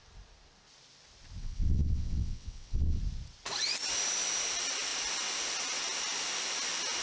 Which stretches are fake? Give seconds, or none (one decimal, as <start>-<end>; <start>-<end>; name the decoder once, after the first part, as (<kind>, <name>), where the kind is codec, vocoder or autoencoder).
1.4-3.0 (vocoder, WaveNeXt)